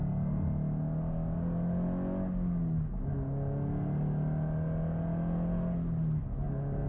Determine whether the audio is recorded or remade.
recorded